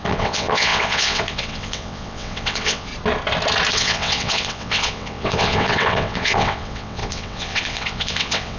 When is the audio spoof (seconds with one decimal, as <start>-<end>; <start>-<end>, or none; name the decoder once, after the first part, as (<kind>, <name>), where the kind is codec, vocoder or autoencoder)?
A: 0.0-2.9 (vocoder, WaveNeXt); 3.7-8.6